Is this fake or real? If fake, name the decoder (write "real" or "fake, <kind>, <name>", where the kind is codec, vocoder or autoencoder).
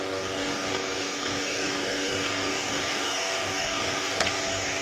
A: fake, codec, DAC